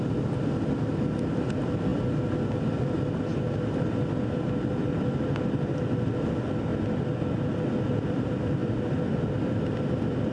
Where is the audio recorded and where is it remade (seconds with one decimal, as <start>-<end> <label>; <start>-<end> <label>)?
0.0-1.9 remade; 1.9-2.7 recorded; 2.7-3.3 remade; 3.3-4.4 recorded; 4.4-6.7 remade; 6.7-7.9 recorded; 7.9-10.3 remade